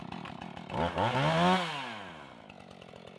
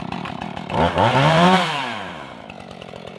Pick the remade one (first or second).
second